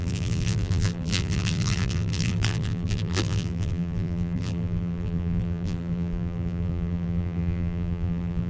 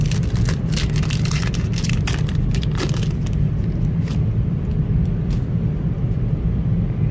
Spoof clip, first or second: first